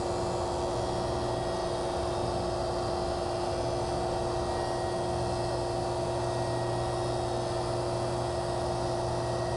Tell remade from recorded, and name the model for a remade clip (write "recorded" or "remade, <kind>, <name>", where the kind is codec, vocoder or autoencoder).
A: recorded